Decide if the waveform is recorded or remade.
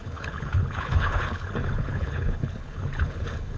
remade